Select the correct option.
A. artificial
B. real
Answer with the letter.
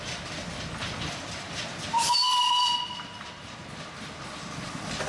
B